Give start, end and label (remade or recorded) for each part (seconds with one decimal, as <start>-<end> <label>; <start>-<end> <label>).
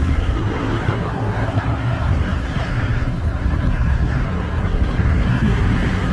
0.0-6.1 remade